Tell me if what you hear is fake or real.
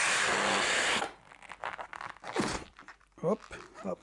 real